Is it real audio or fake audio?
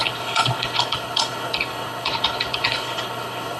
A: fake